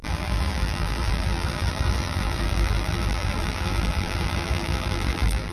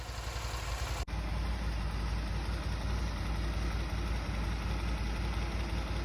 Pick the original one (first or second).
second